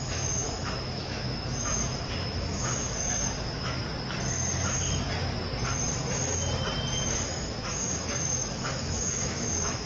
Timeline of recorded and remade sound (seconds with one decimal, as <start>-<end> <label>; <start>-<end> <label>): 0.0-3.8 remade; 3.8-7.0 recorded; 7.0-9.9 remade